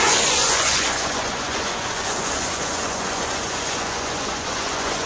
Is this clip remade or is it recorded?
remade